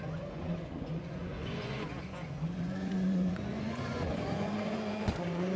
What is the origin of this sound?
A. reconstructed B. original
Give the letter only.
A